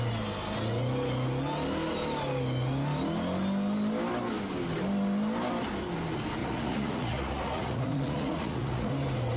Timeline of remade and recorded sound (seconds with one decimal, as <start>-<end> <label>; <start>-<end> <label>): 0.0-6.4 recorded; 6.4-8.9 remade; 8.9-9.4 recorded